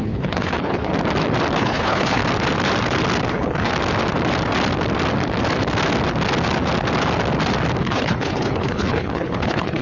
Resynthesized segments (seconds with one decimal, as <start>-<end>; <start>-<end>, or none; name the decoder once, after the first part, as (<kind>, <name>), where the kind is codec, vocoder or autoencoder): 0.0-0.9 (codec, HILCodec); 1.6-2.2; 3.3-3.7; 7.8-9.8